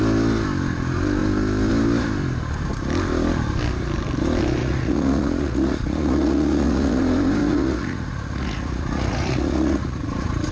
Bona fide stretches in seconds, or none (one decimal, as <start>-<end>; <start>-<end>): 0.0-4.6; 7.0-7.4